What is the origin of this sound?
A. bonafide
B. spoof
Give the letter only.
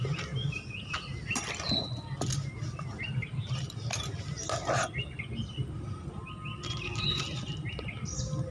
A